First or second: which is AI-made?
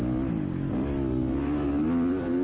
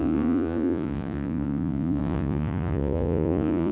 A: second